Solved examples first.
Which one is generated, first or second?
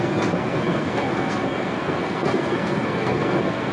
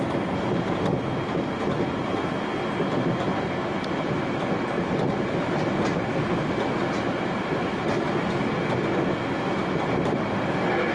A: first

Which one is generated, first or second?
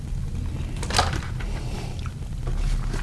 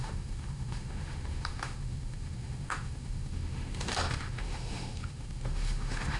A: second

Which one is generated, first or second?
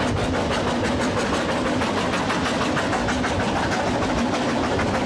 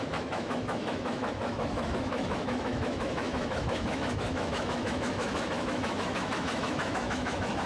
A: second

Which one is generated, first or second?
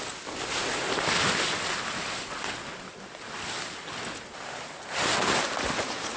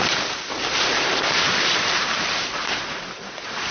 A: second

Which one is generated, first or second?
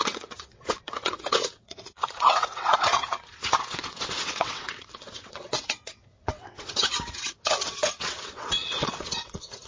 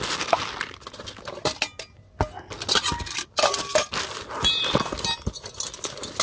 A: first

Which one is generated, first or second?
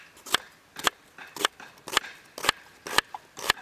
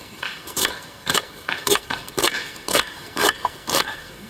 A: second